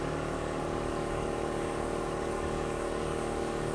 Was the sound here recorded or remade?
remade